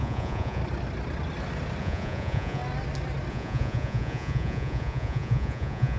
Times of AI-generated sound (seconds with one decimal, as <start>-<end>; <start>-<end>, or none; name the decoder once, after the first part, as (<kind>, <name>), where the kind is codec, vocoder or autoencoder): 0.0-0.6 (vocoder, Vocos); 1.8-2.6; 3.3-6.0